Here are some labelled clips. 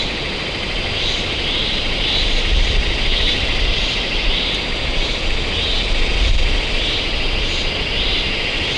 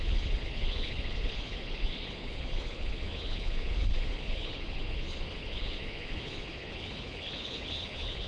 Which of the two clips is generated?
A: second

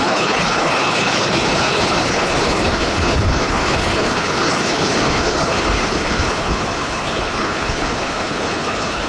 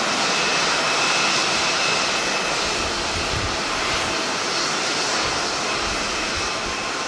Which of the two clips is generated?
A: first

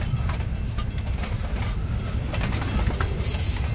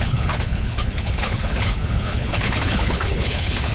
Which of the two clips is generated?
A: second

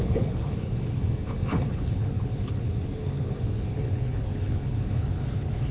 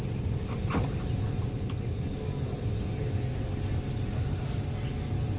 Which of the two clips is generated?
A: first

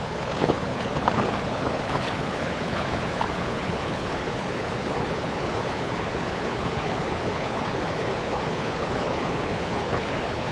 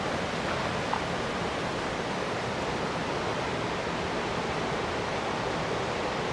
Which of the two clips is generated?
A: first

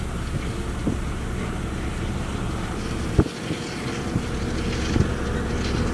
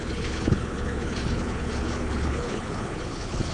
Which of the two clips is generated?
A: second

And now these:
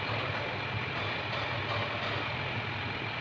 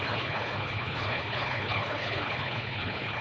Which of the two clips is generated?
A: second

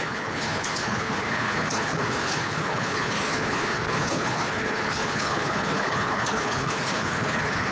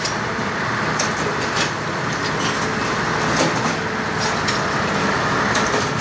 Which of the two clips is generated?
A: first